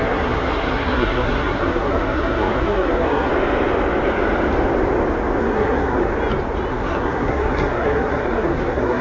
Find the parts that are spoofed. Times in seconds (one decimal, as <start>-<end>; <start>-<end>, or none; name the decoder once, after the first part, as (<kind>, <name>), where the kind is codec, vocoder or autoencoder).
0.0-3.3 (codec, SNAC); 5.4-6.1; 6.7-9.0